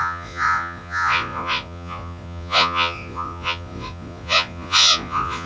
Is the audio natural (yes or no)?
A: no